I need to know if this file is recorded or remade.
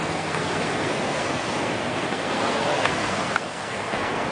remade